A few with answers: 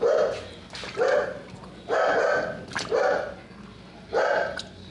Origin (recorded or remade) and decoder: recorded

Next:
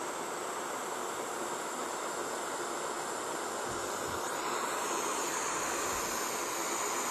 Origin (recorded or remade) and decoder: recorded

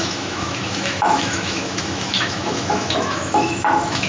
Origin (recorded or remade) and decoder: remade, autoencoder, DAC-VAE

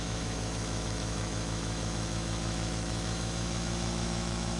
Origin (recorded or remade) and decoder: remade, autoencoder, DAC-VAE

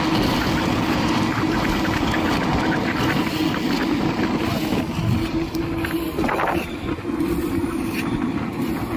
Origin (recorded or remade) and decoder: recorded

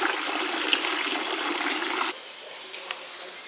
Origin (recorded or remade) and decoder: recorded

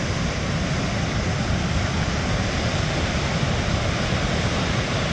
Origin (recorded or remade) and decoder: recorded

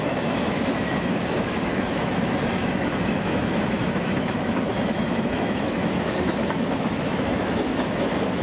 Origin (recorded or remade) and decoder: remade, autoencoder, DAC-VAE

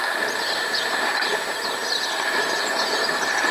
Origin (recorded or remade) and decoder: recorded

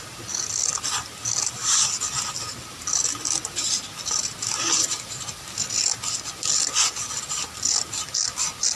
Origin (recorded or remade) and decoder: recorded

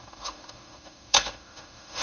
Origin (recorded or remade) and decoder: remade, autoencoder, DAC-VAE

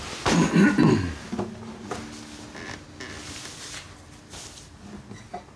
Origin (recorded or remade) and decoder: recorded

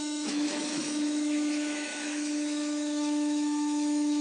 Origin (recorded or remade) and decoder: remade, autoencoder, DAC-VAE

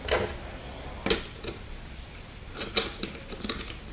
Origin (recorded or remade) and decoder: recorded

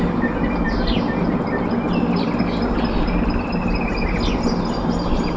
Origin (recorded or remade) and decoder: recorded